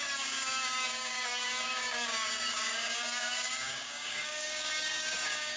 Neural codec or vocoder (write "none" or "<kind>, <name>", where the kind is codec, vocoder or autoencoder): codec, DAC